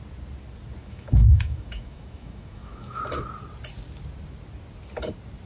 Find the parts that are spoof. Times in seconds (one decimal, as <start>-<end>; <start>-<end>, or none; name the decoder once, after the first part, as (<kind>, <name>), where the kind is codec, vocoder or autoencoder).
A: 0.8-3.0 (autoencoder, DAC-VAE)